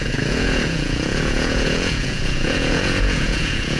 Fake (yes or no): yes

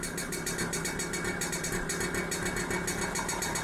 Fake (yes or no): no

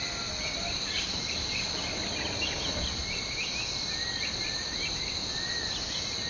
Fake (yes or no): no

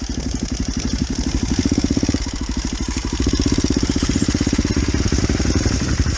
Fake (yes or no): yes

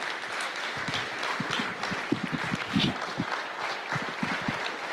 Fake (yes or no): no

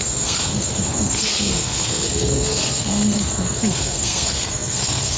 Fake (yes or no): yes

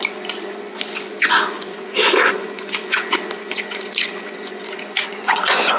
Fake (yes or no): yes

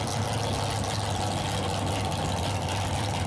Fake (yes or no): no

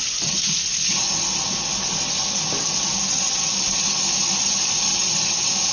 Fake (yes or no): no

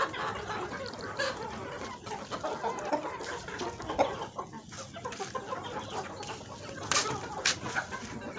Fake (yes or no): no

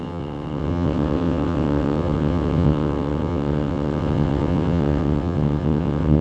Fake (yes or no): yes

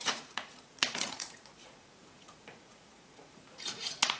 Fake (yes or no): yes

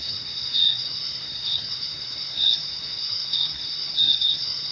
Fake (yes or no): yes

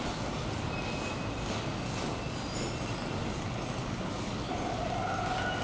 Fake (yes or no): no